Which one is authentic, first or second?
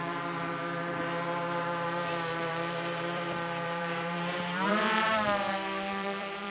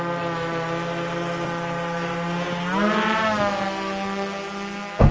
second